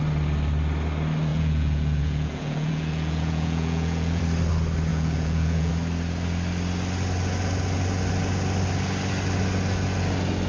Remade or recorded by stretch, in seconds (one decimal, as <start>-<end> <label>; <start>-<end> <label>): 0.0-1.3 recorded; 1.3-4.2 remade; 4.2-4.9 recorded; 4.9-5.7 remade; 5.7-10.5 recorded